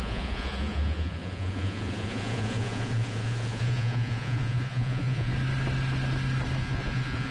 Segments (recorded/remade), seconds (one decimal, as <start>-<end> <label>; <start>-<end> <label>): 0.0-5.3 remade; 5.3-6.6 recorded; 6.6-7.3 remade